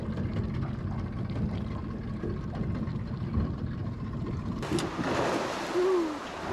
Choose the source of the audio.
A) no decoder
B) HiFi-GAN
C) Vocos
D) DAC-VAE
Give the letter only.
A